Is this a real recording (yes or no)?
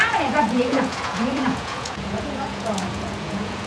no